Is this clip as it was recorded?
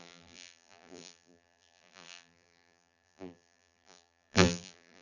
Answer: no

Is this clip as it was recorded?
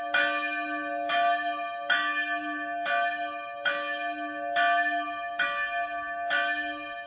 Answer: yes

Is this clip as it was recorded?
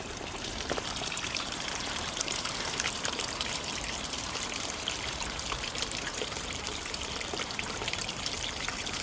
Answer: no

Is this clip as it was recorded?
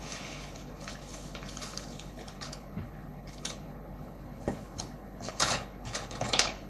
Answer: no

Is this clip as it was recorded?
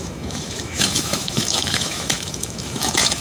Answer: no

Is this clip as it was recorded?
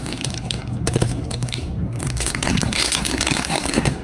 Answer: no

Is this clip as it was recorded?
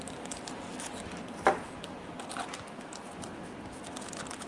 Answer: yes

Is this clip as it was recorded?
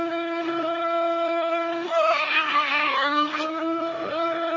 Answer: no